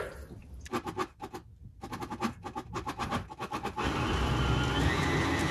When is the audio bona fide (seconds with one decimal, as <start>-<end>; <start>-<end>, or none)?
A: 0.0-0.4; 1.3-5.5

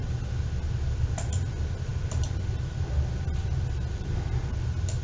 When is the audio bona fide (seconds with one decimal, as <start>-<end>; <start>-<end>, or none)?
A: 0.0-5.0

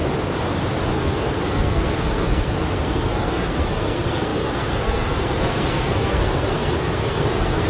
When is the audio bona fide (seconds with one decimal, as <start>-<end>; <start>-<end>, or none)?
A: 0.0-0.9

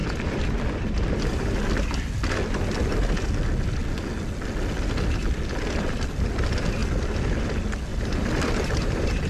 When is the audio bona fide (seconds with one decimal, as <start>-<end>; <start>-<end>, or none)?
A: 0.0-7.9

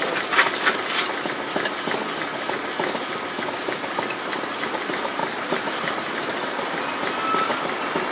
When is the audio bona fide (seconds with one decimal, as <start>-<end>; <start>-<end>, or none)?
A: 0.0-8.1

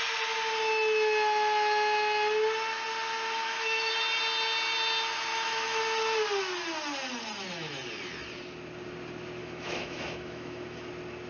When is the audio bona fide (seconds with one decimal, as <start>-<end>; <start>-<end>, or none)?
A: 0.0-3.4; 3.9-5.3; 5.8-9.4; 10.9-11.3